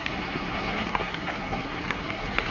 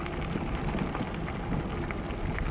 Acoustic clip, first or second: second